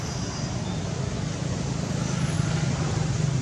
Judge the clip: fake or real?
real